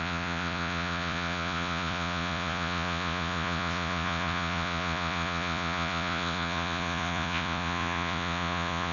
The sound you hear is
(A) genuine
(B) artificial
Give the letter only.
B